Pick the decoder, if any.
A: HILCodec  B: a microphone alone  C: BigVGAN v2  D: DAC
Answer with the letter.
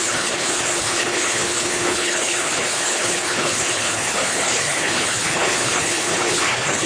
A